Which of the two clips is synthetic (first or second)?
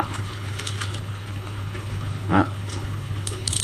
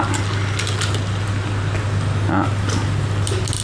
first